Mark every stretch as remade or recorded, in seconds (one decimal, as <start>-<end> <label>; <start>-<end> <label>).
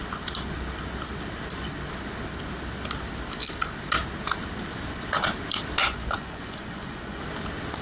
0.0-5.8 recorded; 5.8-7.2 remade; 7.2-7.8 recorded